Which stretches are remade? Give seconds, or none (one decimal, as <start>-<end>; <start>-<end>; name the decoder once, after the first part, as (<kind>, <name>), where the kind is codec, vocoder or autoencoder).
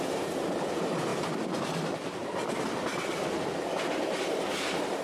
1.1-2.8 (vocoder, BigVGAN v2)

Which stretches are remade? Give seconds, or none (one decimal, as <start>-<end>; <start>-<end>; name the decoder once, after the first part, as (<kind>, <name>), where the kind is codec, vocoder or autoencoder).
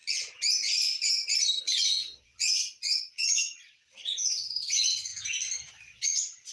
1.6-5.1 (vocoder, Vocos); 5.7-6.5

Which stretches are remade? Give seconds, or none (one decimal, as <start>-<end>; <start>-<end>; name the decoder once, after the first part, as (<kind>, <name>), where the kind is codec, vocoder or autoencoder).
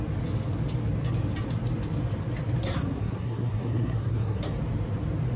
2.6-4.4 (codec, SNAC)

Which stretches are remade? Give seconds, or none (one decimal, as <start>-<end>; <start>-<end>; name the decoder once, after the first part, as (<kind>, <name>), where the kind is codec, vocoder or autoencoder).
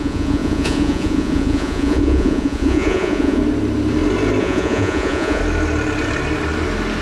0.0-3.4 (vocoder, Vocos); 4.4-5.4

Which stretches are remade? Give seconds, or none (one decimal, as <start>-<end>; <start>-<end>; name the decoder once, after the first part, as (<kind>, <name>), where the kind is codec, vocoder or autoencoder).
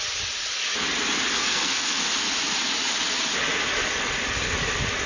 1.4-2.0 (codec, SNAC)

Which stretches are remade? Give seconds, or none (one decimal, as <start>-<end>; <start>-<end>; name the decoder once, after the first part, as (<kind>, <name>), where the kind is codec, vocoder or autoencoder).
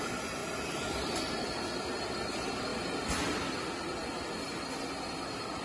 none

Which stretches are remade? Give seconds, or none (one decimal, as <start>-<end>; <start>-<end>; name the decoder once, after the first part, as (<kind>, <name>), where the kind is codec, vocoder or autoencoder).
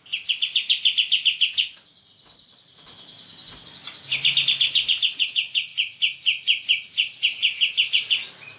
none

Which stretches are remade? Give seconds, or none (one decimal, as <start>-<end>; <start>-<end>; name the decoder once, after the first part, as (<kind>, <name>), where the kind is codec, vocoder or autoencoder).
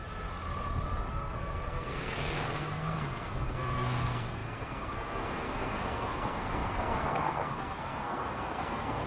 1.1-9.1 (codec, SNAC)